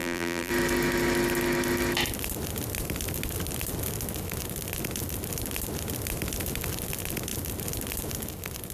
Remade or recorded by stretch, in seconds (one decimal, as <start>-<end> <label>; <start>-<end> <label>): 0.0-0.5 remade; 0.5-8.7 recorded

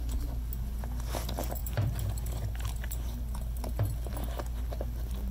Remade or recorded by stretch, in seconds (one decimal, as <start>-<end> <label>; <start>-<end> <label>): 0.0-5.3 recorded

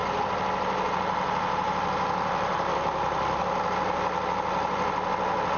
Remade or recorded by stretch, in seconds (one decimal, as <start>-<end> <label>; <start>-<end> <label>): 0.0-5.6 recorded

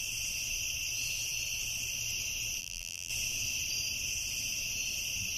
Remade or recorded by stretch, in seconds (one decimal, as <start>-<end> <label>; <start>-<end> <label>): 0.0-2.6 recorded; 2.6-3.1 remade; 3.1-5.4 recorded

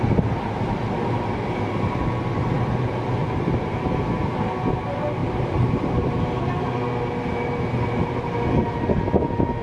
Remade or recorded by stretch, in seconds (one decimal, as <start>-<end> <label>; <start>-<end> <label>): 0.0-3.2 recorded; 3.2-3.8 remade; 3.8-5.2 recorded; 5.2-6.4 remade; 6.4-9.6 recorded